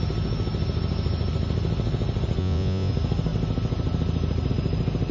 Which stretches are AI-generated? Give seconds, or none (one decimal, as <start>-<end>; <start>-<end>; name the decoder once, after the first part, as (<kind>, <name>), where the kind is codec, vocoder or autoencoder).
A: 2.4-2.9 (vocoder, Vocos)